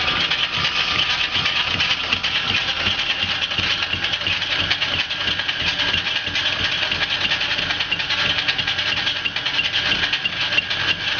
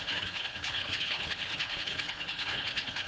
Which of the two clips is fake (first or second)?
second